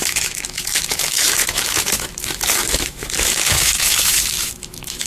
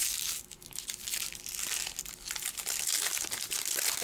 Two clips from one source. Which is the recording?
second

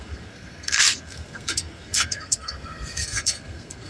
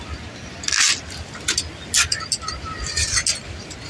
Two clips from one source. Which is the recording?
second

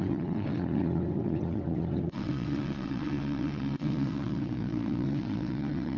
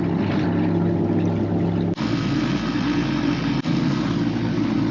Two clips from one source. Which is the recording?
second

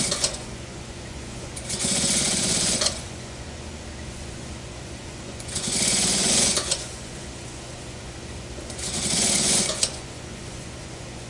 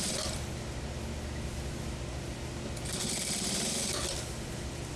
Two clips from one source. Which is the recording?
second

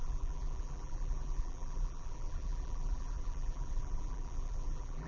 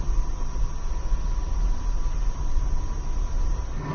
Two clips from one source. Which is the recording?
second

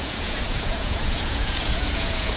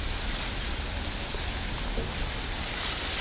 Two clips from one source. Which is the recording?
second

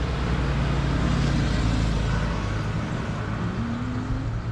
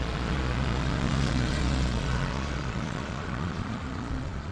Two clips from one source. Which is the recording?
first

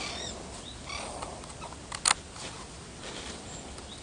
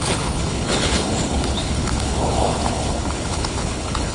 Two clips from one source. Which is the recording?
first